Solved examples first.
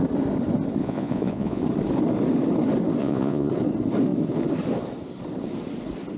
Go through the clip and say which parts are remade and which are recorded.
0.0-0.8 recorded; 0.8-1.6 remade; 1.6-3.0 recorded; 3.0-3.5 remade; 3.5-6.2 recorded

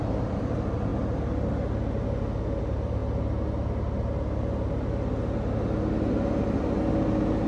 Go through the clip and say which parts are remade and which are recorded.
0.0-0.9 remade; 0.9-2.6 recorded; 2.6-3.0 remade; 3.0-6.8 recorded; 6.8-7.5 remade

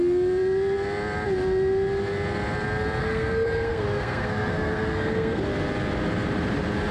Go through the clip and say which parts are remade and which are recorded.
0.0-3.0 recorded; 3.0-5.4 remade; 5.4-6.9 recorded